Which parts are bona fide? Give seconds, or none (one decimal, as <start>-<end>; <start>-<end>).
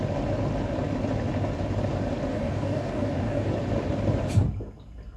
0.0-2.3; 3.5-5.2